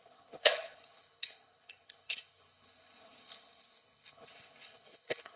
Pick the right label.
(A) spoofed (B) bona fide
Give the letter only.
A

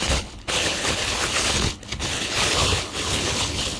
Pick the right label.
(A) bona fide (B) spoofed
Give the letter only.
B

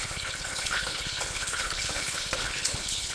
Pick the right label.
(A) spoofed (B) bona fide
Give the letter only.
A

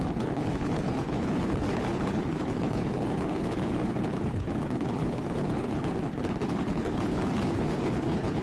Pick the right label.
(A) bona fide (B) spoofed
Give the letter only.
B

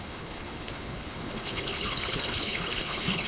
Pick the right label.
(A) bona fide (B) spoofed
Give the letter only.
B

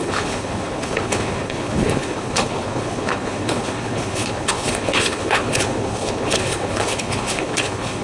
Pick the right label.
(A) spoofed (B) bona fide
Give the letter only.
A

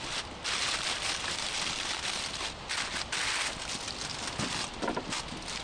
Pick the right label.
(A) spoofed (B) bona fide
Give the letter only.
B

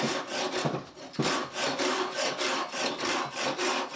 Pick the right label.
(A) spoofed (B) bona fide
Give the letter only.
B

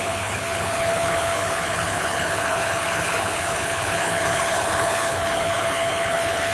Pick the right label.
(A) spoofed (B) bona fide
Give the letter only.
A